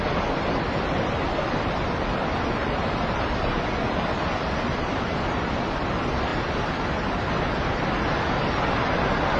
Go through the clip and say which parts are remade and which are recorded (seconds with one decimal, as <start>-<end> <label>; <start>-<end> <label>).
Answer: 0.0-9.4 recorded